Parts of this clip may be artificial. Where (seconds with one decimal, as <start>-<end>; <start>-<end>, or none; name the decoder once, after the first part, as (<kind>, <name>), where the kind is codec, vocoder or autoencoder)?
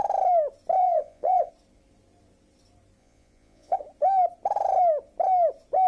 0.8-1.5 (vocoder, Vocos); 3.0-3.8